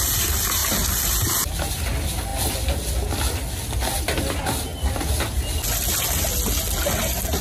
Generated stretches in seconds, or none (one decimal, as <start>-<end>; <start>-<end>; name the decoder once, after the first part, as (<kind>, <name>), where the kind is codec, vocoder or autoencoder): none